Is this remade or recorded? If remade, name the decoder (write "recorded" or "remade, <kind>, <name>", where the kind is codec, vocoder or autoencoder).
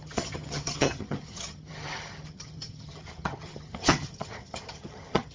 remade, vocoder, HiFi-GAN